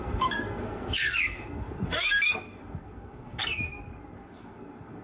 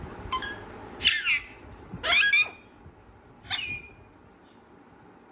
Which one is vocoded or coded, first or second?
first